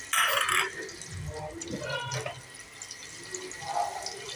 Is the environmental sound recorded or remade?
recorded